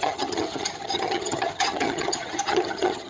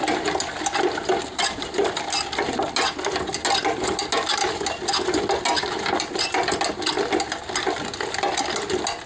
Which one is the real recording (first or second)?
second